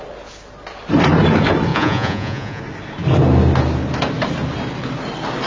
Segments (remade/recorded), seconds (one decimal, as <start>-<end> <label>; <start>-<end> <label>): 0.0-1.7 recorded; 1.7-2.6 remade; 2.6-5.5 recorded